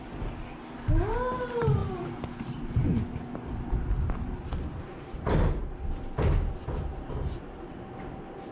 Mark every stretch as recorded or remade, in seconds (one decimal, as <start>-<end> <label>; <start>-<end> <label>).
0.0-8.5 recorded